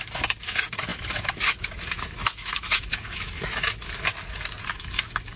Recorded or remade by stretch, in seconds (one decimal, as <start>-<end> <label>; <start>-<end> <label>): 0.0-4.1 remade; 4.1-4.7 recorded; 4.7-5.4 remade